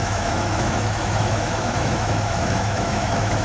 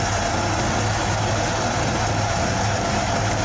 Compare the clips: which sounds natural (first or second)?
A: second